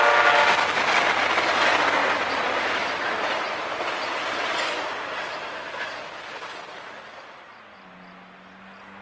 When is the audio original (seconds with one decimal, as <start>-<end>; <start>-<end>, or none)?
0.0-9.0